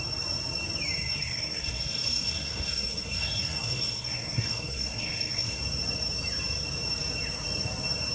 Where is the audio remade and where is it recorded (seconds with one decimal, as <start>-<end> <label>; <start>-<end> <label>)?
0.0-1.2 recorded; 1.2-5.6 remade; 5.6-8.1 recorded